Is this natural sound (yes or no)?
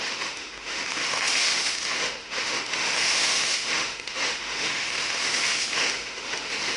no